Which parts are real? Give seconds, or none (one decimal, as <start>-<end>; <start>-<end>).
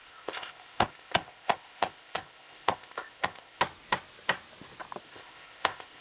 3.6-5.0